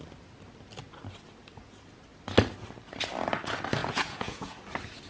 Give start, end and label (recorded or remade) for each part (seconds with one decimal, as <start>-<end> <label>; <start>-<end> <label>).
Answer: 0.0-3.8 recorded; 3.8-4.6 remade; 4.6-5.1 recorded